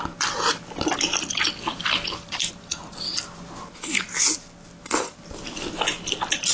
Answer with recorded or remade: recorded